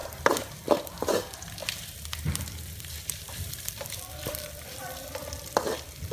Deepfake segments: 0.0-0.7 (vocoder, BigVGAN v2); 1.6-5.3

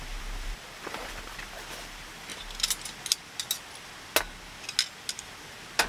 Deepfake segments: 0.0-2.3 (vocoder, BigVGAN v2)

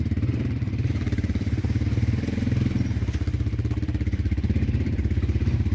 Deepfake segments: 0.0-1.6 (vocoder, BigVGAN v2); 3.8-5.7

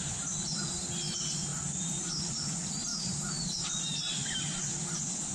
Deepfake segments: 1.5-2.3 (vocoder, BigVGAN v2); 2.9-3.6; 4.2-4.8

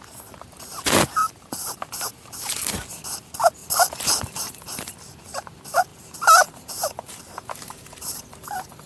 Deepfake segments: 1.2-1.8 (vocoder, BigVGAN v2); 5.9-8.9

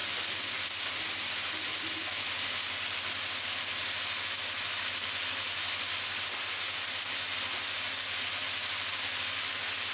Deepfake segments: none

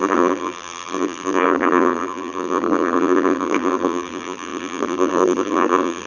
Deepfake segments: 0.0-6.1 (vocoder, BigVGAN v2)